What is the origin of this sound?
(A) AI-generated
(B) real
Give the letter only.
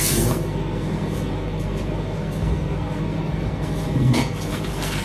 A